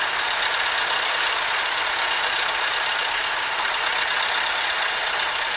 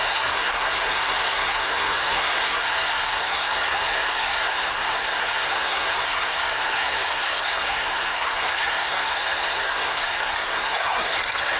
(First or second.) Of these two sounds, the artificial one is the second